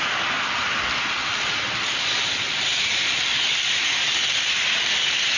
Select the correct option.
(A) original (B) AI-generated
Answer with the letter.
A